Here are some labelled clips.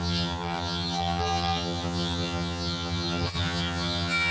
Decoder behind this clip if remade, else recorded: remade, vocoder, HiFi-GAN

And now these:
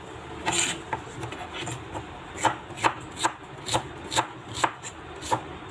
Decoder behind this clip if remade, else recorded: recorded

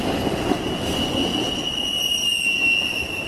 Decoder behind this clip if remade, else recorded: recorded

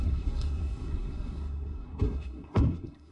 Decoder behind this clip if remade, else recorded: remade, codec, SNAC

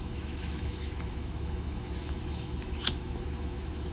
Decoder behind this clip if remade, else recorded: remade, autoencoder, DAC-VAE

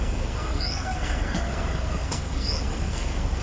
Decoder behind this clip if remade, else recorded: remade, codec, SNAC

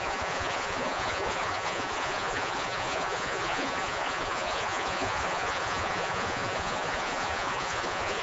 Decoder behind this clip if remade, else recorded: remade, vocoder, Vocos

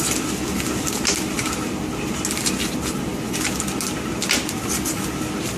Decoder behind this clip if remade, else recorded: recorded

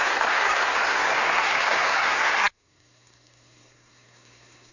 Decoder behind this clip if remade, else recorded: remade, codec, SNAC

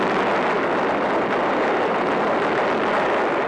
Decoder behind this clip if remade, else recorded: recorded